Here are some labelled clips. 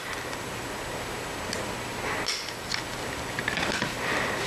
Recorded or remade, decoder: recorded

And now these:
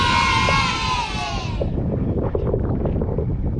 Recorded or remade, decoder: recorded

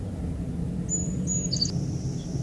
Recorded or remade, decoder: recorded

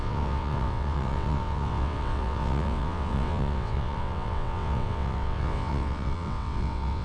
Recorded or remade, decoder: remade, vocoder, WaveNeXt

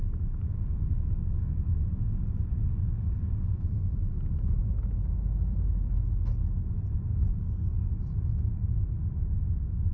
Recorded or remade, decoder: recorded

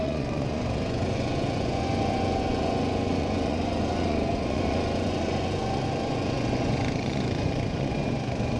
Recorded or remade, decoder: remade, vocoder, Vocos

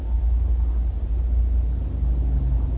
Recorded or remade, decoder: recorded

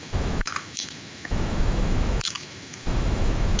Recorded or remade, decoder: remade, autoencoder, DAC-VAE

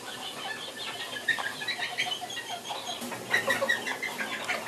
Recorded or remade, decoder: recorded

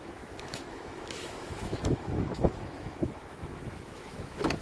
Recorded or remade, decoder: remade, autoencoder, DAC-VAE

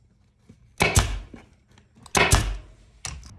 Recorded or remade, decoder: recorded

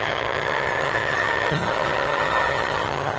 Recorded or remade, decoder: remade, vocoder, HiFi-GAN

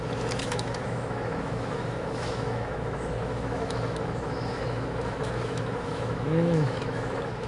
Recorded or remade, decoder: remade, autoencoder, DAC-VAE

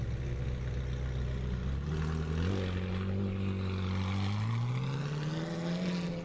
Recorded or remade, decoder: recorded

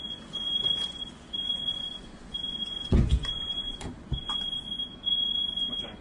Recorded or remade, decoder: remade, vocoder, Vocos